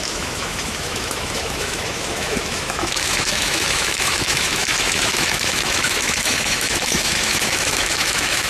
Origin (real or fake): fake